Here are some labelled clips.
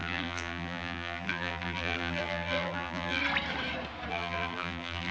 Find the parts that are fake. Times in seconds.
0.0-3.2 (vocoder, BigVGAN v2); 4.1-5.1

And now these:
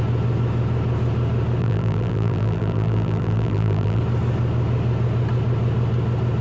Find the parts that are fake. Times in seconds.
1.6-4.0 (vocoder, BigVGAN v2)

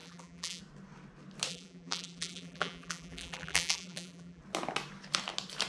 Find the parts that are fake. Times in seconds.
0.0-0.6 (vocoder, BigVGAN v2); 1.5-4.4

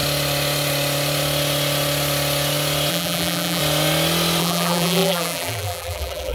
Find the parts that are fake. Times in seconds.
2.9-3.6 (vocoder, BigVGAN v2); 4.4-6.3

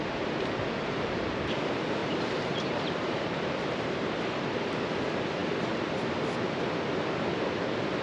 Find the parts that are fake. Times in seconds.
2.0-4.5 (vocoder, BigVGAN v2)